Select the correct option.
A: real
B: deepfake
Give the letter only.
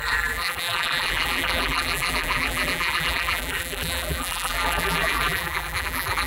B